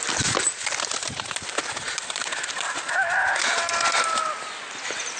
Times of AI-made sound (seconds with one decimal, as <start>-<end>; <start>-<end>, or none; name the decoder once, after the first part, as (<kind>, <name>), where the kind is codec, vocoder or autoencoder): none